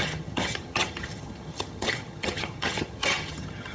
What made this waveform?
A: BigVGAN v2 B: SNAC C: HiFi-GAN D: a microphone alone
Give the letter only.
C